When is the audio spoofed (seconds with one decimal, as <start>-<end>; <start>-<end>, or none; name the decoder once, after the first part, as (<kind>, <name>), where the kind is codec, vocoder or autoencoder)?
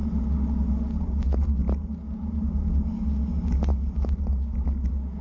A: none